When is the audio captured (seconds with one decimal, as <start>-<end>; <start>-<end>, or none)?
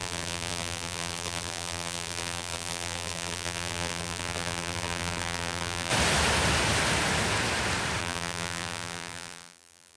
5.9-8.0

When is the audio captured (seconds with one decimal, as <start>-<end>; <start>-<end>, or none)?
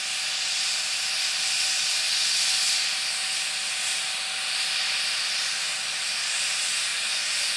0.0-6.9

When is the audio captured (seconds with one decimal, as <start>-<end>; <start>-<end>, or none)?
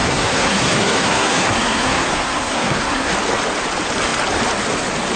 3.1-5.2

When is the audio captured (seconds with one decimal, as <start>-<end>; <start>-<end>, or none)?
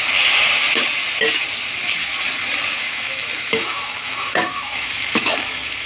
0.0-2.8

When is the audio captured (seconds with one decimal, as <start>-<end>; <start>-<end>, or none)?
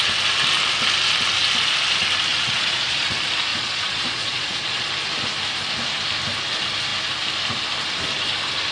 0.0-2.3; 3.0-3.5; 4.9-8.7